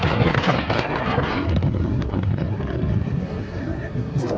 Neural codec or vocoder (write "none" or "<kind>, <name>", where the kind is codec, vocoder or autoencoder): codec, SNAC